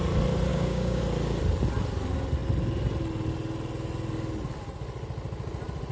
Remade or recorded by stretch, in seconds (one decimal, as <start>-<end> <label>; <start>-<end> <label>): 0.0-0.5 recorded; 0.5-1.0 remade; 1.0-5.9 recorded